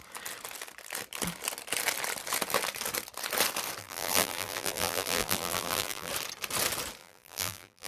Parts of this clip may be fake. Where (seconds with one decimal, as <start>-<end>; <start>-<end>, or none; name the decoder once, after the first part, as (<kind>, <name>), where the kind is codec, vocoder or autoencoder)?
3.8-6.1 (vocoder, BigVGAN v2); 7.0-7.9